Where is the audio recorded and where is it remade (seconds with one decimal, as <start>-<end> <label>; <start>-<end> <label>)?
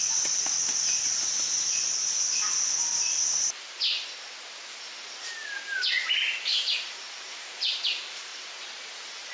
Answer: 0.0-8.3 recorded; 8.3-9.3 remade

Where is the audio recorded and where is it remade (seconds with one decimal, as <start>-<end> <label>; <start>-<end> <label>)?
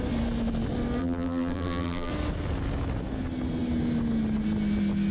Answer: 0.0-1.0 recorded; 1.0-2.1 remade; 2.1-5.1 recorded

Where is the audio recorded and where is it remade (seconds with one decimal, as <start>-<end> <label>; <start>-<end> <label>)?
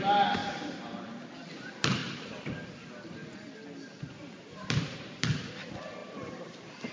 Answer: 0.0-0.4 recorded; 0.4-1.3 remade; 1.3-2.0 recorded; 2.0-5.5 remade; 5.5-6.9 recorded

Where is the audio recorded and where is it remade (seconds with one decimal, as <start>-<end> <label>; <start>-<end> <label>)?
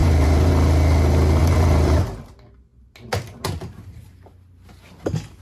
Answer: 0.0-0.5 remade; 0.5-1.4 recorded; 1.4-2.2 remade; 2.2-5.4 recorded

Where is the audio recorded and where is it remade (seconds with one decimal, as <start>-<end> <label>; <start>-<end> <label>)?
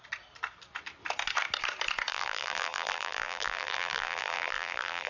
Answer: 0.0-2.1 recorded; 2.1-5.1 remade